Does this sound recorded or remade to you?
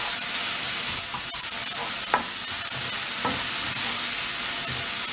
recorded